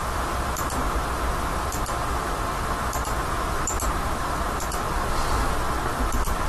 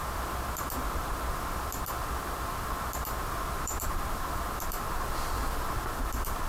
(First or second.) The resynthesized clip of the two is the second